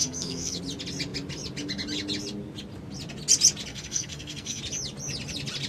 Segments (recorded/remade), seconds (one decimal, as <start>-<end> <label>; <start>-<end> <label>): 0.0-0.6 remade; 0.6-3.7 recorded; 3.7-4.6 remade; 4.6-5.7 recorded